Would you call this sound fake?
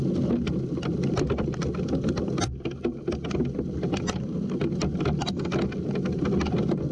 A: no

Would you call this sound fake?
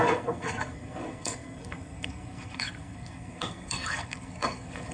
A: yes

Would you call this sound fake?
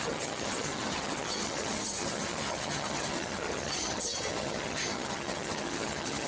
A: yes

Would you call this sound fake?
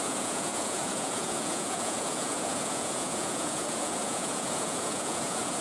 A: yes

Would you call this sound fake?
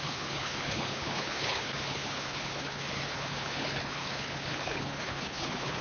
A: yes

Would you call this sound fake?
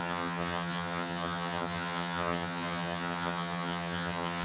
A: yes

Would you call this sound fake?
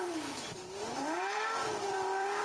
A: yes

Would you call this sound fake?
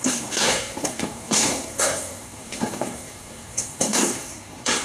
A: yes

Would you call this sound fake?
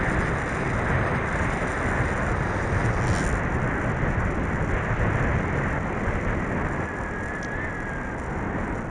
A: no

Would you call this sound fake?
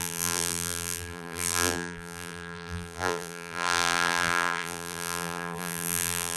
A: yes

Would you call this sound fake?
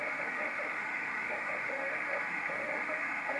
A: yes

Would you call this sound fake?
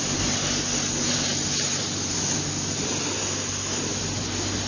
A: no